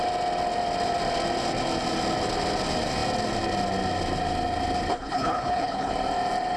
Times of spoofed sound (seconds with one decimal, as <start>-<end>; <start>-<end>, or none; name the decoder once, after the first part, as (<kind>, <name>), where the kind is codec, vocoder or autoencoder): 4.9-5.9 (codec, HILCodec)

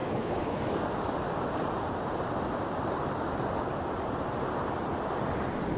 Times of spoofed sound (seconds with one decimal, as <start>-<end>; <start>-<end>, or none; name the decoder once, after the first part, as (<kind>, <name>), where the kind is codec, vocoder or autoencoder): 0.0-0.6 (codec, HILCodec)

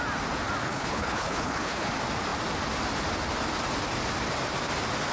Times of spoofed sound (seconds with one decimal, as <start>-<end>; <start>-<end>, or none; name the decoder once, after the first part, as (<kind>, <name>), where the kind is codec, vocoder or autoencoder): 0.6-1.9 (codec, HILCodec)

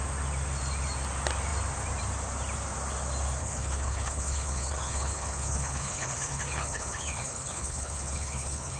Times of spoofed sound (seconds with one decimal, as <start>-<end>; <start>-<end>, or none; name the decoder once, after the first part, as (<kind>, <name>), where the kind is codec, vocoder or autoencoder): 3.4-8.8 (codec, HILCodec)

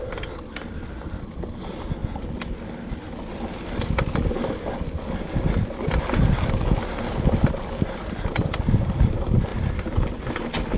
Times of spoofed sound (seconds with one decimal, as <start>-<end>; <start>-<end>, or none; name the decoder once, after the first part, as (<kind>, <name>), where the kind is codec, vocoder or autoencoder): none

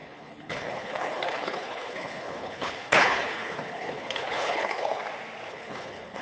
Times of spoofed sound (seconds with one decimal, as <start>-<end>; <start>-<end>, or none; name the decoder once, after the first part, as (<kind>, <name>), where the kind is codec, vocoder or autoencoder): 0.0-5.0 (codec, HILCodec); 5.5-6.2